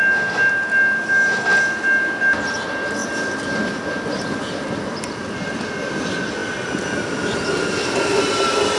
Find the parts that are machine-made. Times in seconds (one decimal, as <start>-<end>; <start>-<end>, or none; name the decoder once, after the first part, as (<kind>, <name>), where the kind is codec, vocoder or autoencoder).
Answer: none